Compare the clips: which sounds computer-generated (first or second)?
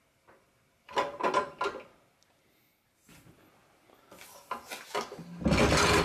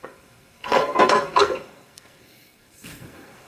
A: second